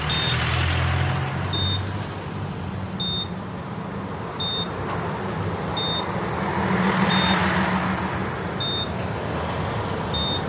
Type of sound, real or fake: real